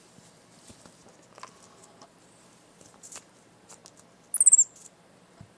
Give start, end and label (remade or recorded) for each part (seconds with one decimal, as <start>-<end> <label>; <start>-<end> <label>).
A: 0.0-1.0 remade; 1.0-1.8 recorded; 1.8-3.8 remade; 3.8-4.8 recorded; 4.8-5.6 remade